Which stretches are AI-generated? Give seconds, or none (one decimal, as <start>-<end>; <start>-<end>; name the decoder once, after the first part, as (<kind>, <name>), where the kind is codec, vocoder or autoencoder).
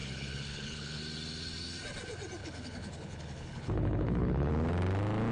0.0-1.0 (codec, HILCodec); 2.4-4.5